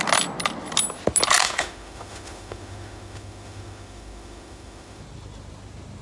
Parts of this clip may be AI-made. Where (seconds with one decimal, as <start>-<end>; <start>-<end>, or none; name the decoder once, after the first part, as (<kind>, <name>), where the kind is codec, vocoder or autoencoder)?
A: 1.4-5.0 (autoencoder, DAC-VAE)